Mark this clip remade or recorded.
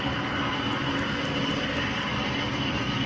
recorded